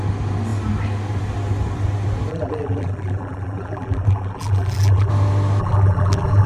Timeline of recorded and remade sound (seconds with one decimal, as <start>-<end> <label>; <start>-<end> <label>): 0.0-2.3 recorded; 2.3-5.1 remade; 5.1-5.6 recorded; 5.6-6.5 remade